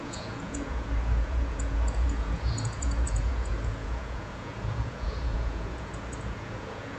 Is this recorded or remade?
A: remade